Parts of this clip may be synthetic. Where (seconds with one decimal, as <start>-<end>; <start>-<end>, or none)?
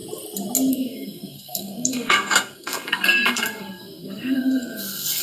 0.7-5.2